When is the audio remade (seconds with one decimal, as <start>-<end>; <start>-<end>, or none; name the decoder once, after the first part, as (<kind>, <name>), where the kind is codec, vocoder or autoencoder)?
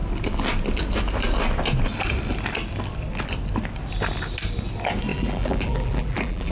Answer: 5.1-6.5 (vocoder, BigVGAN v2)